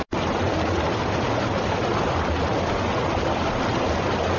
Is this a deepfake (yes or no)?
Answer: no